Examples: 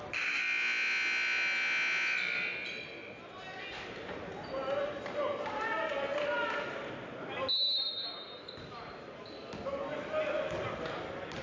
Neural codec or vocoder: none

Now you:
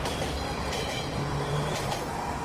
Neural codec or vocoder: vocoder, BigVGAN v2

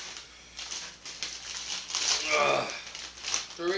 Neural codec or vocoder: none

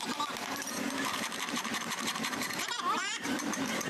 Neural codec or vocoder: vocoder, BigVGAN v2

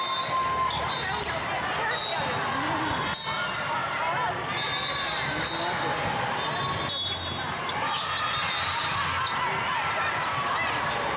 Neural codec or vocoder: none